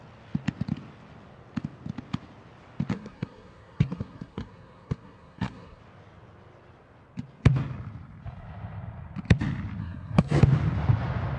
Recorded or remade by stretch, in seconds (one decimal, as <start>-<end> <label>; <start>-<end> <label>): 0.0-2.9 recorded; 2.9-5.8 remade; 5.8-9.8 recorded; 9.8-10.4 remade; 10.4-11.4 recorded